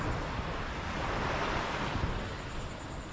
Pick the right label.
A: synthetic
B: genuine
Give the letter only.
B